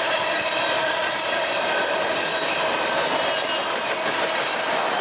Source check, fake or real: fake